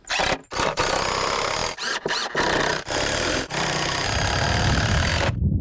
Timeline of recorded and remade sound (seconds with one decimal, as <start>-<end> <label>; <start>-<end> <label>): 0.0-0.4 recorded; 0.4-0.9 remade; 0.9-1.6 recorded; 1.6-2.3 remade; 2.3-2.7 recorded; 2.7-5.6 remade